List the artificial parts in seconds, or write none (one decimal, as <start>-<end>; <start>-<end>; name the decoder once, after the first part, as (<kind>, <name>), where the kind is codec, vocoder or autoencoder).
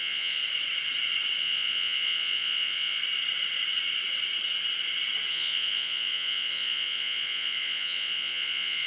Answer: 0.0-0.4 (vocoder, Vocos); 1.4-3.0; 5.3-8.9